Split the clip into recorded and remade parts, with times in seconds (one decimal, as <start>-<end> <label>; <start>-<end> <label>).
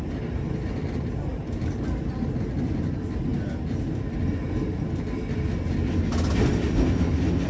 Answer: 0.0-7.5 recorded